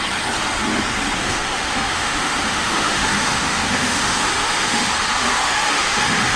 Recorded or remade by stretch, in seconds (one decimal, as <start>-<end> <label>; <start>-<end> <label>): 0.0-1.2 recorded; 1.2-4.9 remade; 4.9-5.4 recorded; 5.4-6.4 remade